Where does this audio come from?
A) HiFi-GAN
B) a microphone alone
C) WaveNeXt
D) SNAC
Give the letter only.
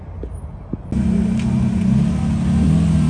B